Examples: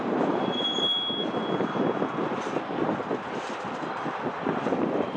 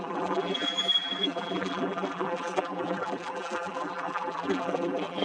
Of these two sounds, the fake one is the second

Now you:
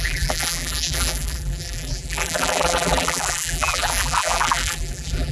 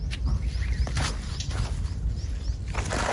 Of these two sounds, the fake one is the first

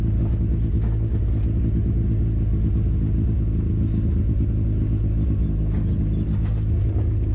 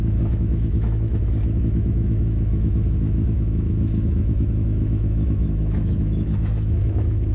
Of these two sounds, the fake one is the second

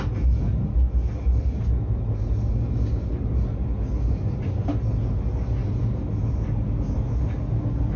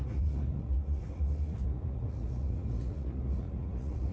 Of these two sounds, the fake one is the second